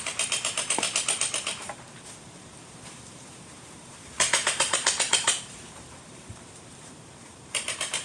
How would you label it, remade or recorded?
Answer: remade